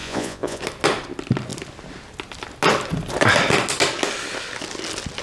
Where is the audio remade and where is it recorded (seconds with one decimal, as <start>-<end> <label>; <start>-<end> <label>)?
0.0-0.6 remade; 0.6-5.2 recorded

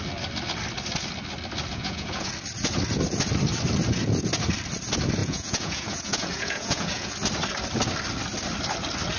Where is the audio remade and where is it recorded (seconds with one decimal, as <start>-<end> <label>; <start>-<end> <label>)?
0.0-1.7 recorded; 1.7-2.3 remade; 2.3-5.2 recorded; 5.2-7.1 remade; 7.1-9.2 recorded

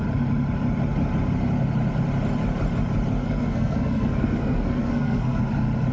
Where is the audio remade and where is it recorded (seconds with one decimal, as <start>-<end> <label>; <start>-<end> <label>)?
0.0-3.2 recorded; 3.2-5.4 remade; 5.4-5.9 recorded

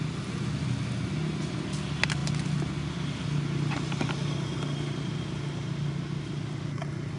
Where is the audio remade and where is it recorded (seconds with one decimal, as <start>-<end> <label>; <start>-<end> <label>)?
0.0-7.2 recorded

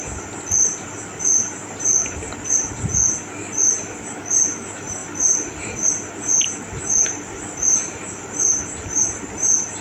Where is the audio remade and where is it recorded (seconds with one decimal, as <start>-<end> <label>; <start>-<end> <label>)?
0.0-9.8 recorded